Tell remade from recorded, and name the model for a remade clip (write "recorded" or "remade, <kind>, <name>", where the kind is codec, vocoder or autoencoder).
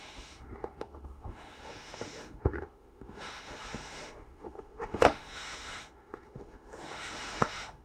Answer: remade, autoencoder, DAC-VAE